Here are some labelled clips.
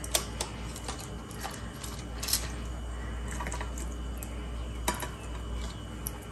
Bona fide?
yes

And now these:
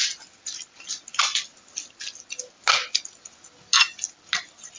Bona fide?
yes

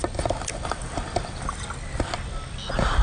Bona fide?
yes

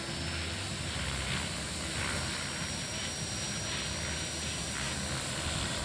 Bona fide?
yes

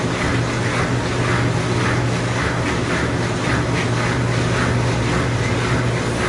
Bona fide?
yes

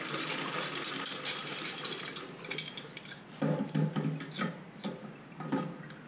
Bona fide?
yes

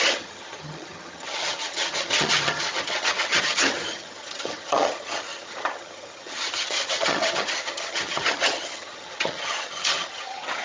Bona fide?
no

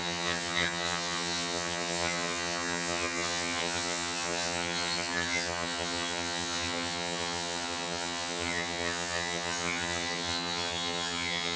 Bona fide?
no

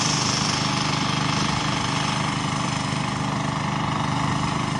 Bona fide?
yes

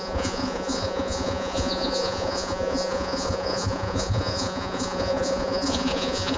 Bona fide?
no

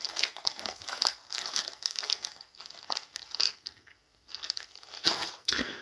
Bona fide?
no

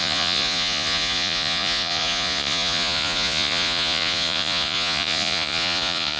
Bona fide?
no